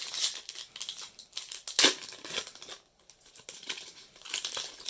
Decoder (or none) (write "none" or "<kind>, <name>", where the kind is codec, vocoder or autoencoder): none